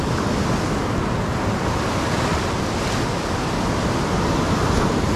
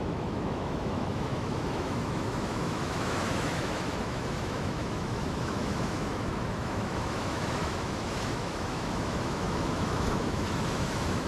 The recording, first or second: first